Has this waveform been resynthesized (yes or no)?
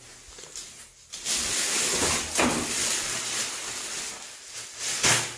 no